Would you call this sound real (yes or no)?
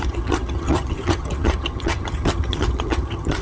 no